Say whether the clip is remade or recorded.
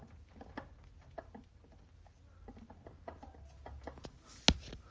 recorded